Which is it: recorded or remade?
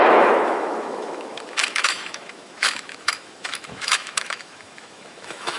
remade